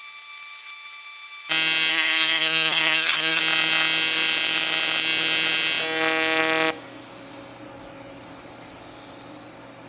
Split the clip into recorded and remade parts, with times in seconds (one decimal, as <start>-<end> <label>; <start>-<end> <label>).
0.0-1.9 recorded; 1.9-3.4 remade; 3.4-9.9 recorded